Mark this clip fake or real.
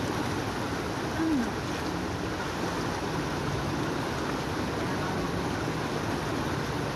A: real